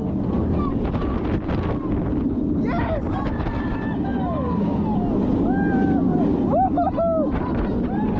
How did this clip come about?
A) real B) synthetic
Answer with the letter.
A